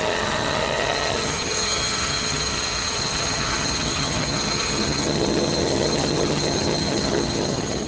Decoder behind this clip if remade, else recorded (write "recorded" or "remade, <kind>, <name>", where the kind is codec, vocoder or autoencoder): remade, vocoder, HiFi-GAN